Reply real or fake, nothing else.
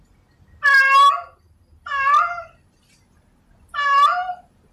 real